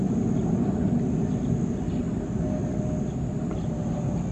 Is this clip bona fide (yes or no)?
yes